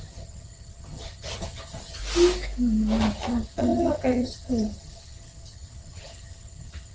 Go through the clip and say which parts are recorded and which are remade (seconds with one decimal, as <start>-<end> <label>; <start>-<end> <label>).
0.0-2.0 remade; 2.0-3.0 recorded; 3.0-6.9 remade